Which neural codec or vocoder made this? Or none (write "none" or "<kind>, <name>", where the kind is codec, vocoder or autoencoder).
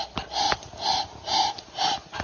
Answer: none